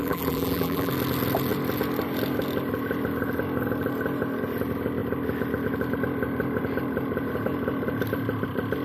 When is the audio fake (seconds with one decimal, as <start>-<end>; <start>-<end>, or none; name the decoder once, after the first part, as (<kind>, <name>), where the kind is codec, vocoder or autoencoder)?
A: 0.0-0.9 (vocoder, BigVGAN v2)